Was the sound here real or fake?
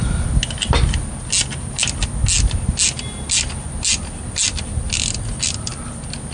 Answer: real